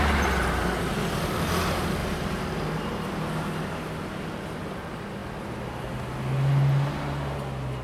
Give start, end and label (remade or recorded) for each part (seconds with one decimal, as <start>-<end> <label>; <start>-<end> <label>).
0.0-2.0 recorded; 2.0-2.8 remade; 2.8-7.8 recorded